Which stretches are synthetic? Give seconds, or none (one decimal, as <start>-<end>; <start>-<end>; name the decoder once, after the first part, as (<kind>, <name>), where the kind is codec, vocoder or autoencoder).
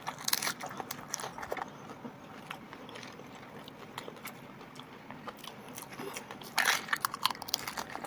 none